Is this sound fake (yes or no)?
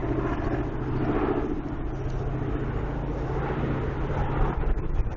no